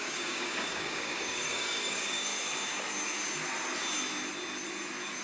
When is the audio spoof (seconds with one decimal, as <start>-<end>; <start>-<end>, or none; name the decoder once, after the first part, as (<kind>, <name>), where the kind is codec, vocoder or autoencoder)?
0.0-2.3 (codec, DAC)